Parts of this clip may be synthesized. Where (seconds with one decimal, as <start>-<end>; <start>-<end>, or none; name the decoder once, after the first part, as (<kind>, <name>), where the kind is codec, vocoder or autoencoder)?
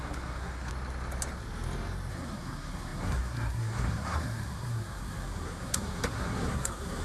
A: 0.0-0.7 (codec, SNAC); 2.1-7.0